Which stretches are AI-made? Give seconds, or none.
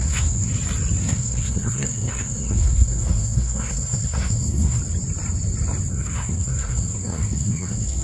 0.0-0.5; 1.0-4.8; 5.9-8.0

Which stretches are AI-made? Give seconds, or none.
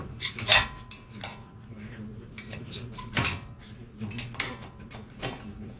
none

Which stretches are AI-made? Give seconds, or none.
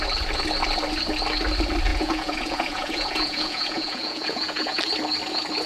1.9-4.8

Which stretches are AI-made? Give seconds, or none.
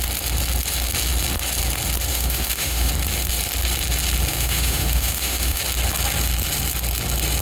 2.1-2.9; 4.3-5.6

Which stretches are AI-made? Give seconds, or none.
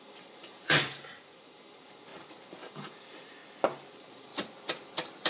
0.0-3.4; 3.9-4.3